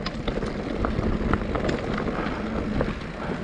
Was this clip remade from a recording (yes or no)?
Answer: no